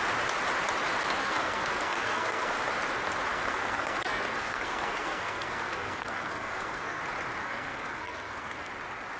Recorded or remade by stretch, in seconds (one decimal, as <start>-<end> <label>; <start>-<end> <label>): 0.0-1.2 recorded; 1.2-2.6 remade; 2.6-3.3 recorded; 3.3-7.0 remade; 7.0-7.4 recorded; 7.4-8.7 remade; 8.7-9.2 recorded